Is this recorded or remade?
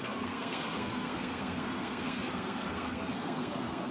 remade